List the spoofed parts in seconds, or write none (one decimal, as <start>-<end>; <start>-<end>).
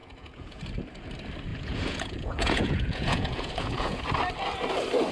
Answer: 0.0-0.6; 1.5-4.0